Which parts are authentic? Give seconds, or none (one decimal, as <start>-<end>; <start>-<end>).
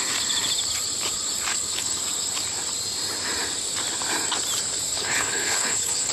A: 0.0-1.5; 2.0-4.9